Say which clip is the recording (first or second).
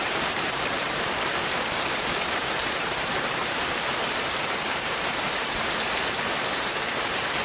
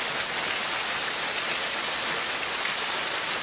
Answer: second